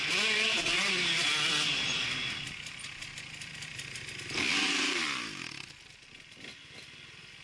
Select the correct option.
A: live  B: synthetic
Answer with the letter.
B